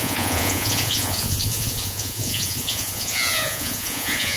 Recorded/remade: remade